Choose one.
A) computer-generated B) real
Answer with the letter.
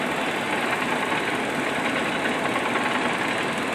B